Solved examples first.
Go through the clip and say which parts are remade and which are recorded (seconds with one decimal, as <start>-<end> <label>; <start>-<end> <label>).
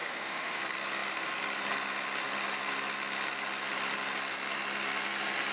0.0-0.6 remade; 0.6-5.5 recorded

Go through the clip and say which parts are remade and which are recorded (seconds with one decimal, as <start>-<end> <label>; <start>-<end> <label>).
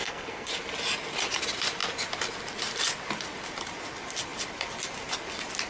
0.0-0.5 remade; 0.5-5.7 recorded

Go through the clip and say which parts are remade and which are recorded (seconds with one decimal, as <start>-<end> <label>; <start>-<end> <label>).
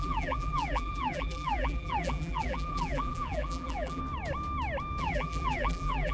0.0-4.0 remade; 4.0-5.0 recorded; 5.0-6.1 remade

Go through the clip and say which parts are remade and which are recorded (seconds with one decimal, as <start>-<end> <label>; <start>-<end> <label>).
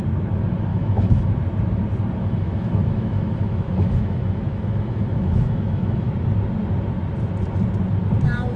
0.0-0.7 recorded; 0.7-1.3 remade; 1.3-2.2 recorded; 2.2-6.1 remade; 6.1-8.6 recorded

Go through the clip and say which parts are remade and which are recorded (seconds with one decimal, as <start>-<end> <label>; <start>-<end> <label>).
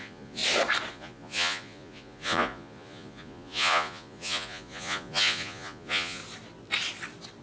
0.0-0.4 remade; 0.4-0.9 recorded; 0.9-6.2 remade; 6.2-7.4 recorded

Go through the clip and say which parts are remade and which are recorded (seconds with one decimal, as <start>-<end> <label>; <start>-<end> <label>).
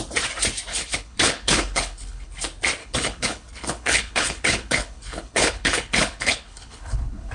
0.0-0.7 recorded; 0.7-2.3 remade; 2.3-2.8 recorded; 2.8-7.3 remade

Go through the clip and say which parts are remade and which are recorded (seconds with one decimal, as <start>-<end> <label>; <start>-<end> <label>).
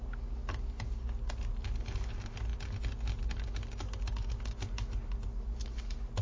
0.0-6.2 recorded